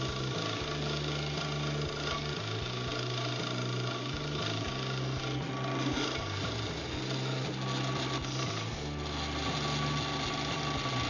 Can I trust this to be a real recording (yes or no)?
yes